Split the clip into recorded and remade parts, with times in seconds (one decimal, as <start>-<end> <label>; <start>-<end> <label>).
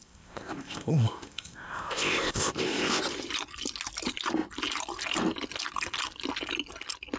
0.0-3.0 remade; 3.0-7.2 recorded